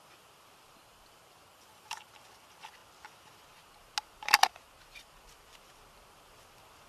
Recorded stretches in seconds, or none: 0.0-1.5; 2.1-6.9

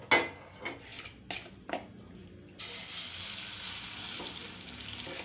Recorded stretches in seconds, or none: 0.0-5.2

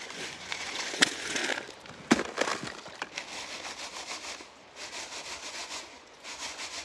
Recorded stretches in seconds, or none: 1.4-5.5

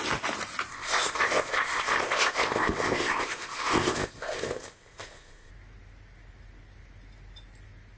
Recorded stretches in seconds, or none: 0.0-0.7; 5.5-8.0

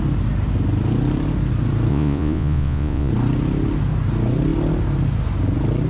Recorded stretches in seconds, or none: 0.0-1.9; 3.1-5.9

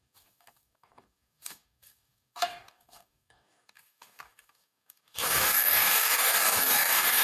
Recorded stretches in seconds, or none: none